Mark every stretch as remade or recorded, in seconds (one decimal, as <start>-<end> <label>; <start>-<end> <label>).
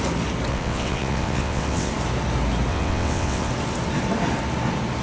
0.0-0.5 recorded; 0.5-1.9 remade; 1.9-2.7 recorded; 2.7-3.5 remade; 3.5-5.0 recorded